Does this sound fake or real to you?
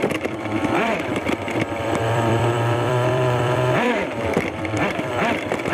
fake